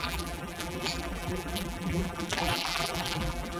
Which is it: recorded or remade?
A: remade